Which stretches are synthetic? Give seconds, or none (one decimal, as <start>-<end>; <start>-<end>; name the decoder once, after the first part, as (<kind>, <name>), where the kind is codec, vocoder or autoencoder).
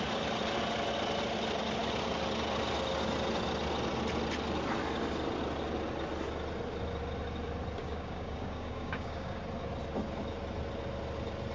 7.8-9.4 (codec, DAC)